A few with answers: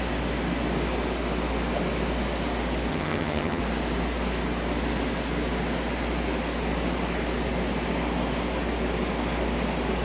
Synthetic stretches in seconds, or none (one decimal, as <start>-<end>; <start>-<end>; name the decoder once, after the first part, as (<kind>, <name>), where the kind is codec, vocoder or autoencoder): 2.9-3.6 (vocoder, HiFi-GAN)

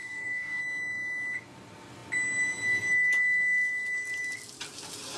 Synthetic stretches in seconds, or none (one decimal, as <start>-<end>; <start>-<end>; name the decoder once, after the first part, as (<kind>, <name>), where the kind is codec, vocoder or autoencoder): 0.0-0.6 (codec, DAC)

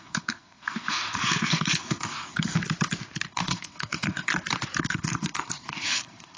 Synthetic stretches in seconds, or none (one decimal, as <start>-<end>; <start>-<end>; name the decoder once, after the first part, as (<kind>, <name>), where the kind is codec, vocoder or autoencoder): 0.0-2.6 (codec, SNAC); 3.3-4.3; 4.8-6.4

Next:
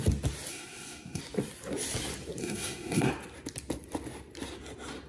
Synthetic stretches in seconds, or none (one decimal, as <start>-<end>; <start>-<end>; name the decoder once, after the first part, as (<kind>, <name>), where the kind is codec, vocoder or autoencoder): 0.5-1.2 (codec, SNAC); 2.4-3.1

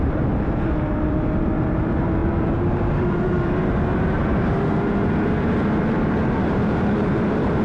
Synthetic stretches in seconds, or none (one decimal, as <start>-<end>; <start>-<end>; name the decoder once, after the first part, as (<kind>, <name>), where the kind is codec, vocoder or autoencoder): 0.0-7.6 (vocoder, BigVGAN v2)